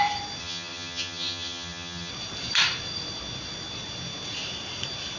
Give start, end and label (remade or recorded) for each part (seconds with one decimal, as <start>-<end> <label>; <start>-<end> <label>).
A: 0.0-0.4 recorded; 0.4-2.1 remade; 2.1-5.2 recorded